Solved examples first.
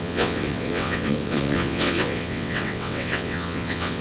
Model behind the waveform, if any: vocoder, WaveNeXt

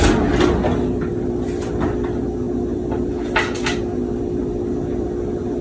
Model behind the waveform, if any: none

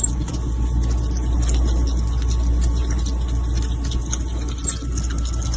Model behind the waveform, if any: none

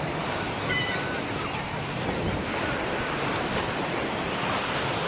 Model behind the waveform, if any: none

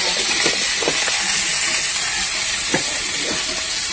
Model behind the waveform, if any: none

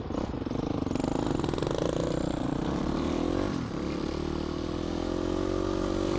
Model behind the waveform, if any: none